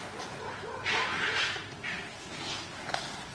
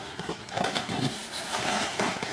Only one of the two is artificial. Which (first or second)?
second